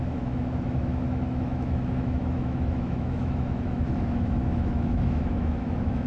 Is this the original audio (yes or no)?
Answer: no